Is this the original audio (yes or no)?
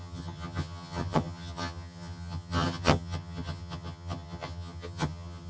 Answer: no